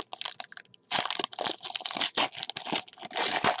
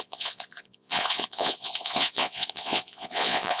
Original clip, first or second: first